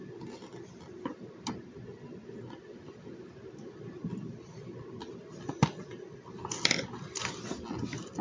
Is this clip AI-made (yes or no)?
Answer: no